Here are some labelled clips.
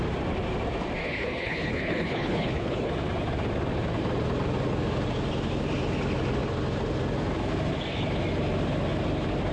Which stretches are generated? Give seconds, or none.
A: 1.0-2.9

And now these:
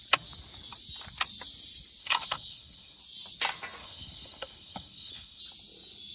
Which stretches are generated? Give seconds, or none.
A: 2.0-3.0; 3.8-5.4

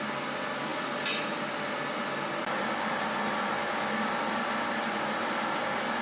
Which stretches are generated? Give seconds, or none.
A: none

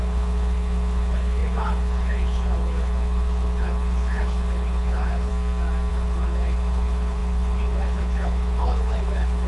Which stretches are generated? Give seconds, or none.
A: 0.0-5.3; 5.9-9.5

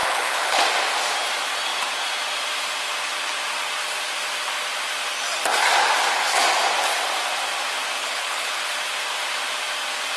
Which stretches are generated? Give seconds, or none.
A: 0.0-0.6; 8.0-8.6